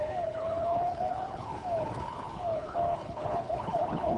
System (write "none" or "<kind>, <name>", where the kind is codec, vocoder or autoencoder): codec, HILCodec